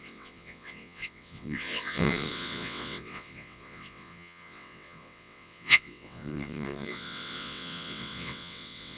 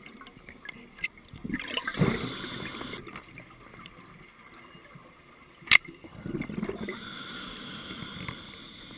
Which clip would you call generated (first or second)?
first